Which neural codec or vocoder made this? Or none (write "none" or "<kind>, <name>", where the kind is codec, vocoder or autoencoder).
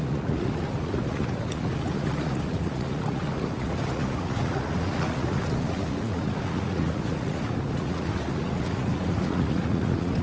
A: vocoder, Vocos